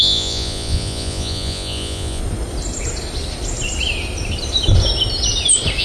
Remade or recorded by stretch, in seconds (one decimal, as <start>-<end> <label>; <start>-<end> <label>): 0.0-2.2 remade; 2.2-5.8 recorded